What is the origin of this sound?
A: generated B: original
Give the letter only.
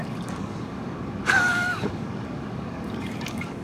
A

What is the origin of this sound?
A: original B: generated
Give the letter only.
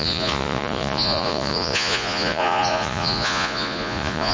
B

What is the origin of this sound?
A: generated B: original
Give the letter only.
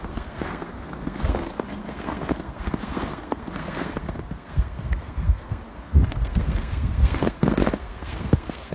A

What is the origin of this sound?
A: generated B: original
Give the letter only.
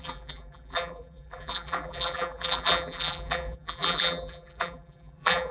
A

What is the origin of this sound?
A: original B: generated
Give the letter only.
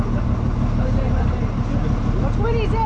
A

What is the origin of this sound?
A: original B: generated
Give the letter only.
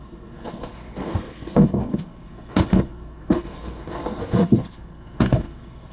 B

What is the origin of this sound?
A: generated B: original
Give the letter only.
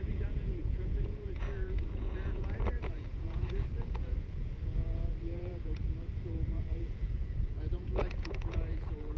A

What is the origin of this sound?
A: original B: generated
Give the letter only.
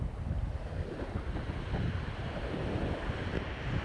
A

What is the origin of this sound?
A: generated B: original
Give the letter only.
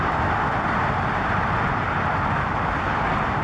B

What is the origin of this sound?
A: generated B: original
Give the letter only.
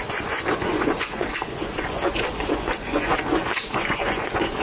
A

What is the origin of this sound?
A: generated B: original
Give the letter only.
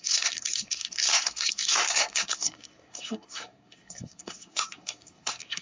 A